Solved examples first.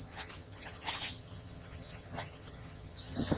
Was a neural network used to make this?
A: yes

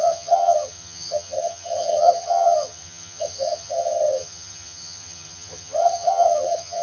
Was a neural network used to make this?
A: yes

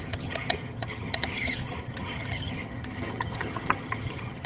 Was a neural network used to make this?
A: yes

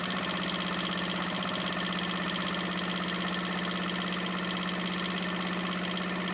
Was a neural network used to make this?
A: no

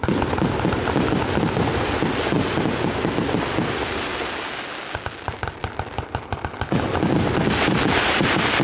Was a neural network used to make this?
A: no